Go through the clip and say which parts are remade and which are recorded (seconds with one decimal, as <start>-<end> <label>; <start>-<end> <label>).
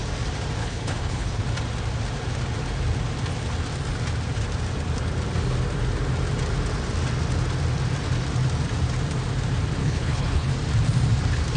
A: 0.0-0.6 recorded; 0.6-1.4 remade; 1.4-9.8 recorded; 9.8-10.5 remade; 10.5-11.6 recorded